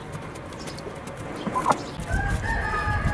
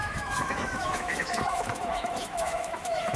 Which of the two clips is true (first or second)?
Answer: first